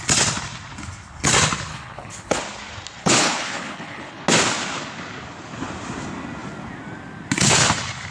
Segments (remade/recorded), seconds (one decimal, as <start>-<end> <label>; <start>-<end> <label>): 0.0-1.7 recorded; 1.7-2.4 remade; 2.4-3.0 recorded; 3.0-4.2 remade; 4.2-8.1 recorded